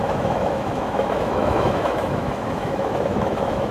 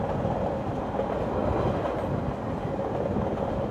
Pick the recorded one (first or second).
second